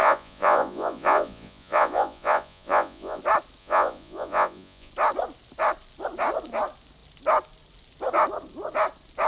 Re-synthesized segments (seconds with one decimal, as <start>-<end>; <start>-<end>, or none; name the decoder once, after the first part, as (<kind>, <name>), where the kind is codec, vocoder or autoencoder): 0.0-3.2 (vocoder, Vocos); 3.6-4.9